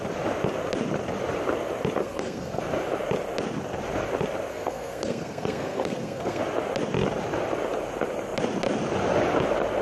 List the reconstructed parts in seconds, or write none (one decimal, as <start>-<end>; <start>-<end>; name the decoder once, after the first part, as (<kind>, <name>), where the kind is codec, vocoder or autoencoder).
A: 2.0-2.6 (codec, SNAC); 4.5-6.4